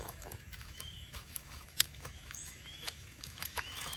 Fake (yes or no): yes